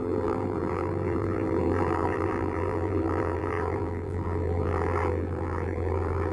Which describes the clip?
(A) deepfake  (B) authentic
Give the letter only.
A